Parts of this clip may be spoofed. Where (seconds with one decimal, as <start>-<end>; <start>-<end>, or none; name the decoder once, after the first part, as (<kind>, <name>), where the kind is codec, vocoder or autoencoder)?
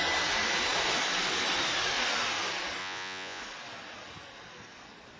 2.8-3.4 (vocoder, Vocos)